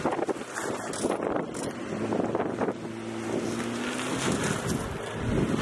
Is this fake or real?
real